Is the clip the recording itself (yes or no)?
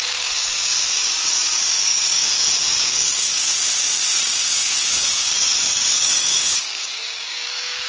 no